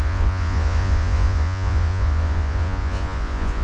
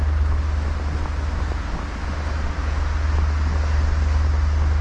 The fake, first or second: first